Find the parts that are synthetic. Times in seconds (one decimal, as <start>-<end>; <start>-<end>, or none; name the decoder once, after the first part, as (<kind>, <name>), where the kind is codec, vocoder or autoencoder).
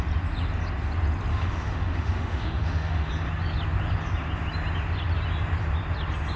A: 1.3-3.1 (autoencoder, DAC-VAE)